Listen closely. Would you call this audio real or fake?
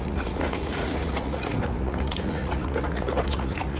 fake